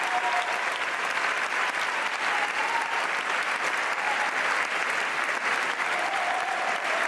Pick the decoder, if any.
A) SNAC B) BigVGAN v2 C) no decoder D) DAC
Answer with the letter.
C